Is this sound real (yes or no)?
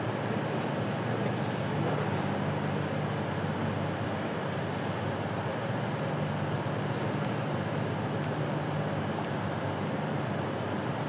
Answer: yes